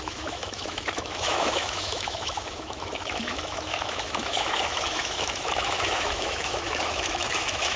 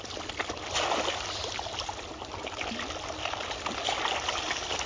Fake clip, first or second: first